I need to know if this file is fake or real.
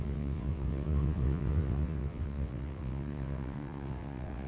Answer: fake